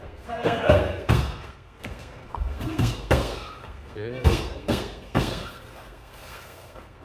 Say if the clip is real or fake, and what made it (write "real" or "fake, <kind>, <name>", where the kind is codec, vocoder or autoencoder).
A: fake, codec, SNAC